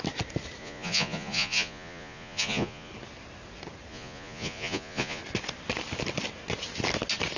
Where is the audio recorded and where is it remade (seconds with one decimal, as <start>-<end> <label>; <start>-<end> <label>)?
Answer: 0.0-0.6 recorded; 0.6-2.9 remade; 2.9-3.9 recorded; 3.9-5.2 remade; 5.2-7.4 recorded